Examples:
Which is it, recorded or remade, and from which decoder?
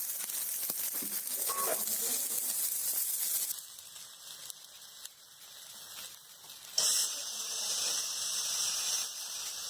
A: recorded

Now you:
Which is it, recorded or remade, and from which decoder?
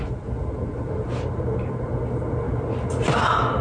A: recorded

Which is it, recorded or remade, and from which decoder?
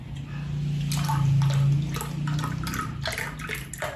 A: recorded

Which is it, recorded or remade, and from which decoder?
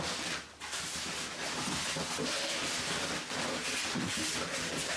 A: recorded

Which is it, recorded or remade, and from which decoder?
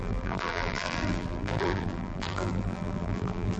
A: remade, vocoder, BigVGAN v2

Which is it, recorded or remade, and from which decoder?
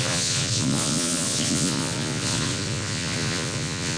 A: remade, vocoder, Vocos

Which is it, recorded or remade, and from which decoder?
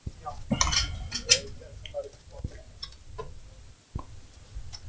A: recorded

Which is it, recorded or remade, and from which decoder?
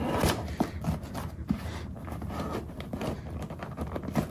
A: recorded